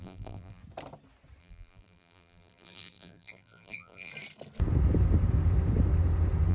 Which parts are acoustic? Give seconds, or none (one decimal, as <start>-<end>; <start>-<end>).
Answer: 0.6-1.4; 4.1-6.5